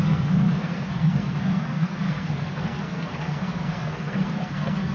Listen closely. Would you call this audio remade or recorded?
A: remade